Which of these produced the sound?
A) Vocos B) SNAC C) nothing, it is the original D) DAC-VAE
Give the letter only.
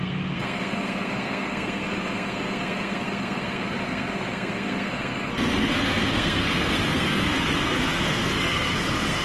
B